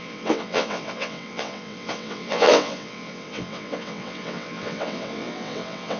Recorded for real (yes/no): no